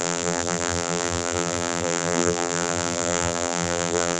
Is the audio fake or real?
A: fake